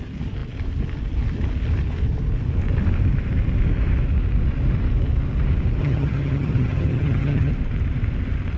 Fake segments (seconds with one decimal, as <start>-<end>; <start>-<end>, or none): 5.8-7.5